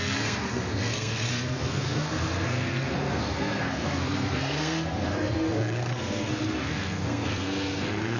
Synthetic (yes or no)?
yes